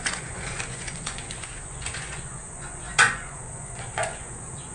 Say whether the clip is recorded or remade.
remade